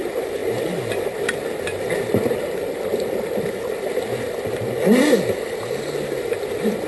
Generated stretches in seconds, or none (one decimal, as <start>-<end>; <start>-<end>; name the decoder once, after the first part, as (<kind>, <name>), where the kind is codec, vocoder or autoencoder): none